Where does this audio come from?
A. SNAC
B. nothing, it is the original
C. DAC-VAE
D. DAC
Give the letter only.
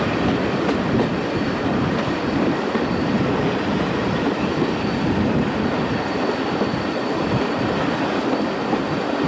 B